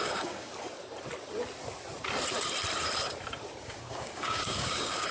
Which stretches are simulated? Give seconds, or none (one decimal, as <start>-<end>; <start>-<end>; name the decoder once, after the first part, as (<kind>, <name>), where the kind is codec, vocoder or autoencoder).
0.0-0.5 (codec, DAC); 3.6-5.1